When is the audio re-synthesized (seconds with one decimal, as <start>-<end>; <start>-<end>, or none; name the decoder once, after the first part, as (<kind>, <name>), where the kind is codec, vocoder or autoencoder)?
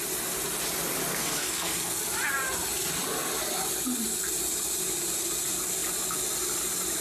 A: 1.1-2.0 (codec, SNAC)